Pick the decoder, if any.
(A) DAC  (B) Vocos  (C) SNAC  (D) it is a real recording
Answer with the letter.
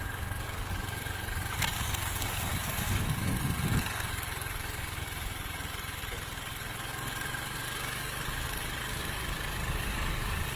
A